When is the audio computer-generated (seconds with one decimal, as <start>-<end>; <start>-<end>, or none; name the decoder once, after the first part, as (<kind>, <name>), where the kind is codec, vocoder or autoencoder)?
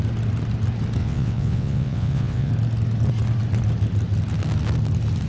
1.0-2.5 (vocoder, WaveNeXt)